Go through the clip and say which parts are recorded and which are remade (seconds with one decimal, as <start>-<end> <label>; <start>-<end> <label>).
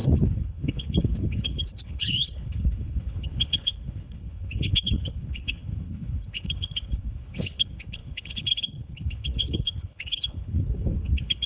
0.0-11.5 remade